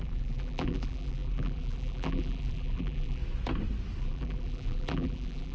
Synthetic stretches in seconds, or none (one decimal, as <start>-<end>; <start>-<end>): 0.0-3.2; 4.0-5.5